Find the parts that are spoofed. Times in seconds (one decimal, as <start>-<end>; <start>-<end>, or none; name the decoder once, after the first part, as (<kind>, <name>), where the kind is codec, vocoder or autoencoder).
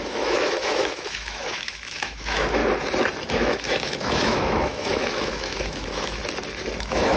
0.0-2.6 (autoencoder, DAC-VAE); 3.3-6.2; 6.8-7.2